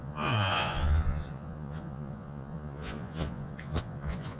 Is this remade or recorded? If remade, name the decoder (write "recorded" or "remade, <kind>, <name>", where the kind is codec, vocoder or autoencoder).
remade, vocoder, Vocos